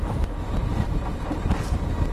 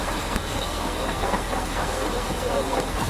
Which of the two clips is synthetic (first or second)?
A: second